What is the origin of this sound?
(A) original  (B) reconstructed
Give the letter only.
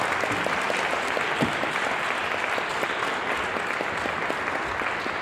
A